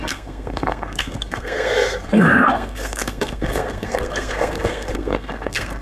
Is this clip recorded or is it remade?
remade